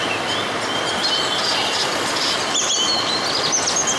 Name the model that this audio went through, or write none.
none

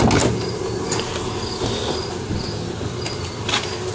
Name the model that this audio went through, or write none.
none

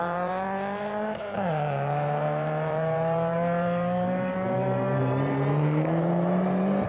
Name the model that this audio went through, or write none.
vocoder, BigVGAN v2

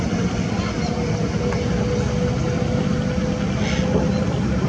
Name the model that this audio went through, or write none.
none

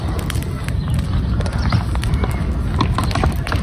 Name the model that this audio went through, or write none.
none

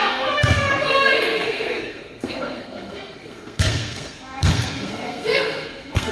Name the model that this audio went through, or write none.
codec, SNAC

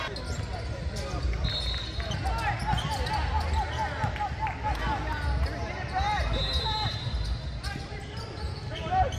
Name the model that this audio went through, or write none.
none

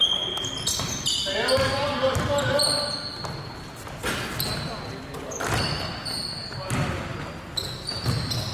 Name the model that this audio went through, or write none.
none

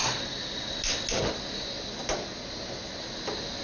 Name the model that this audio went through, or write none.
none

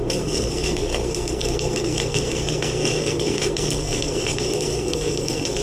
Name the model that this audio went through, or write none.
codec, SNAC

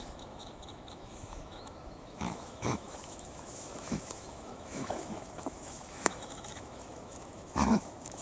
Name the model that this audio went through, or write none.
autoencoder, DAC-VAE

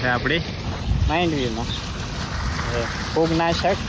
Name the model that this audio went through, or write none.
none